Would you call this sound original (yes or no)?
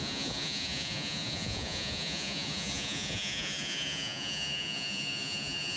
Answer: no